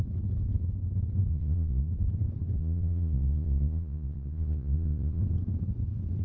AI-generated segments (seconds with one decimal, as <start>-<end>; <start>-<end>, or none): 1.3-1.9; 2.6-5.2